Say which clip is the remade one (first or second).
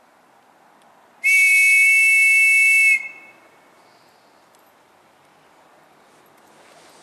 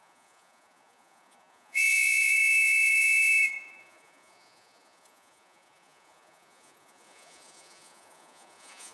second